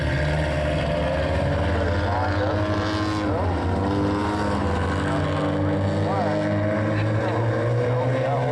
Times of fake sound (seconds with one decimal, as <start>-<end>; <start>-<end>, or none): none